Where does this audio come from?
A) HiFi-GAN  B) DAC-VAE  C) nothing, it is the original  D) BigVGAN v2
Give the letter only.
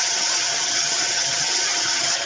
A